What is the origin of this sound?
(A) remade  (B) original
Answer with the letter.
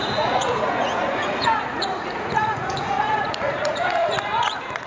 A